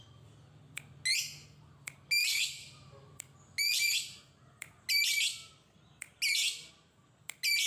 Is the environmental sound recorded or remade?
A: recorded